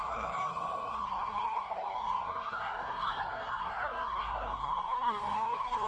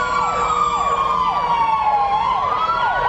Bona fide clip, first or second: second